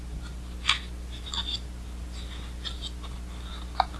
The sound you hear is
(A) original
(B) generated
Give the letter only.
A